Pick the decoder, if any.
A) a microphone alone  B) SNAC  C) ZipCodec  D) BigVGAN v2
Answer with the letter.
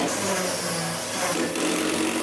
A